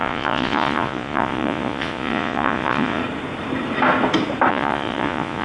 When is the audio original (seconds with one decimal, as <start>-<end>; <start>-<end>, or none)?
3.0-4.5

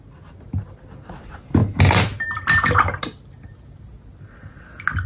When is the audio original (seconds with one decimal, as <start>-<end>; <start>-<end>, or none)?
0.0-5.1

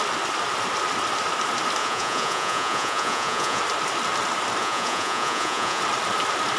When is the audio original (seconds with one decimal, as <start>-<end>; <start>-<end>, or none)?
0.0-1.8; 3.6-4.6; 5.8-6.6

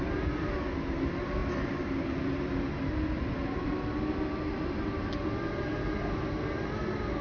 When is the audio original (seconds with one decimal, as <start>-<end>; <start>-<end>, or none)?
0.0-7.2

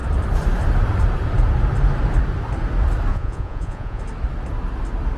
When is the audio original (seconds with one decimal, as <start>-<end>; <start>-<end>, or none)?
0.0-3.1; 4.0-5.2

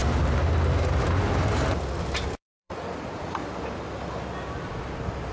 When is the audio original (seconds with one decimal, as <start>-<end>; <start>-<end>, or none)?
0.0-2.4; 3.4-5.3

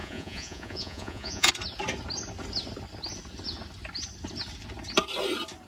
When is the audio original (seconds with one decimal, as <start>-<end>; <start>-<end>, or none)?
1.5-5.7